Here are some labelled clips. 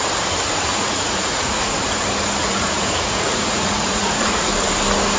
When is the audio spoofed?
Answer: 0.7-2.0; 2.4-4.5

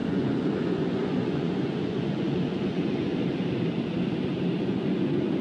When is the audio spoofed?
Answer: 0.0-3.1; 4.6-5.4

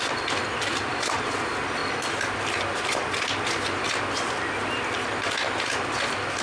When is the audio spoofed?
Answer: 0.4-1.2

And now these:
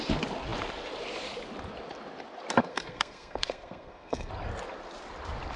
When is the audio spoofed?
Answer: 2.6-4.3

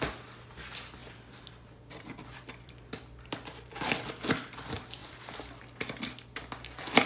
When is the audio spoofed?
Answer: 1.0-4.1